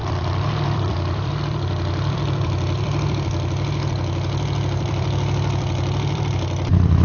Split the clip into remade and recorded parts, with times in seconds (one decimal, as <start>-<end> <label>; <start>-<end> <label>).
0.0-7.0 remade